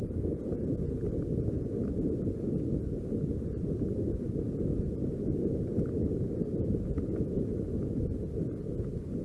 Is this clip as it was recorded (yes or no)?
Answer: yes